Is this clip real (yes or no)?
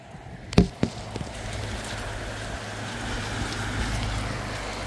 yes